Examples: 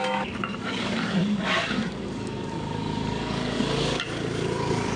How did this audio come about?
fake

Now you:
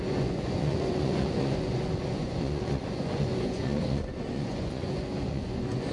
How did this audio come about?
fake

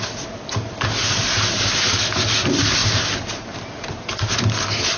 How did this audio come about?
real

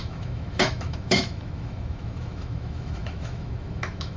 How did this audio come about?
fake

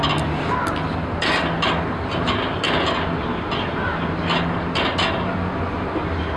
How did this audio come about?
real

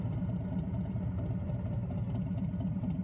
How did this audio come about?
real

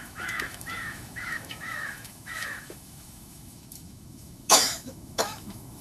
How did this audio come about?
fake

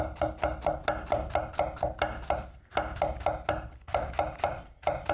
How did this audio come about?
real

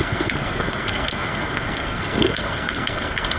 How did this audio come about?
fake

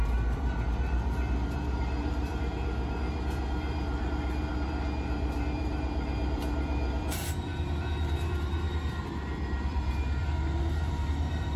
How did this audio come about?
fake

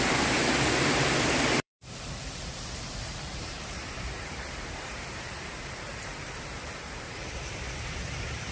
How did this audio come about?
fake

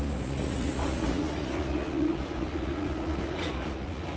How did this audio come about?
fake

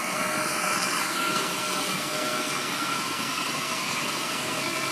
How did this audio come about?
fake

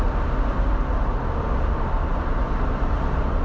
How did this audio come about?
real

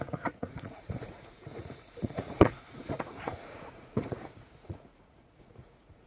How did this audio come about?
fake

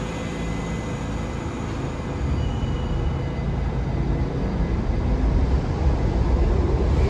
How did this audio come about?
real